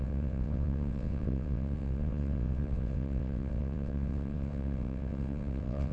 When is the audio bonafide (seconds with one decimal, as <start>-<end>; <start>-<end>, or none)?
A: none